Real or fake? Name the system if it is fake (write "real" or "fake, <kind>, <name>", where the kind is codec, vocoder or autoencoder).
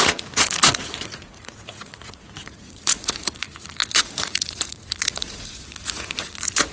fake, vocoder, Vocos